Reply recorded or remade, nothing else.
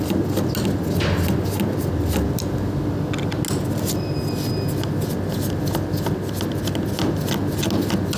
recorded